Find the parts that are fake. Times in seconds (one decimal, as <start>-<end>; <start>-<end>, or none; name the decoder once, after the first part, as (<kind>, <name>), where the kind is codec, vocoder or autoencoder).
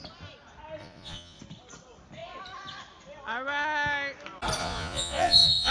0.8-1.4 (vocoder, Vocos); 4.6-5.7